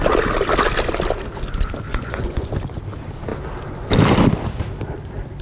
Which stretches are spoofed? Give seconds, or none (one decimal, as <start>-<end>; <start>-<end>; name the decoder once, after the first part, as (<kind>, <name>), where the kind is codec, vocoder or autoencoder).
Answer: 1.9-2.5 (vocoder, Vocos)